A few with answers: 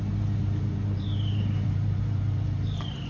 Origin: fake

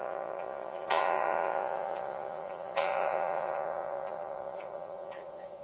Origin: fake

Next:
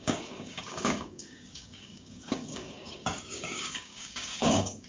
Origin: fake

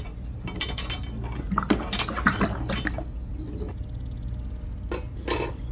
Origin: real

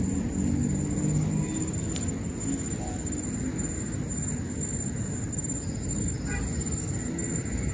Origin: real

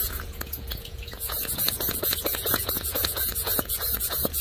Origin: fake